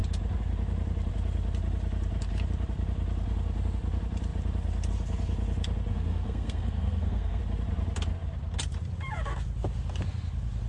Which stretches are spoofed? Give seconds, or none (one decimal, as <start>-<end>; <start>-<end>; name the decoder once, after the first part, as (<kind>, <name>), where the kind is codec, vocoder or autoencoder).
5.9-7.4 (codec, SNAC)